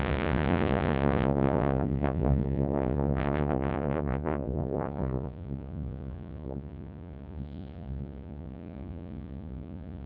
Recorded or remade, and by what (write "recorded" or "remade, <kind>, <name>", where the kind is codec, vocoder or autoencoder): remade, vocoder, Vocos